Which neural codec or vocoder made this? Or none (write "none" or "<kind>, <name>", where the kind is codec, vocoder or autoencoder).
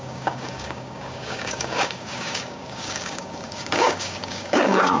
codec, DAC